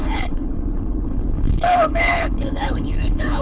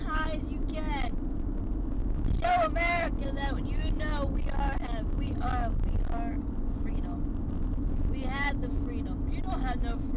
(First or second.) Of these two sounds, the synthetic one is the first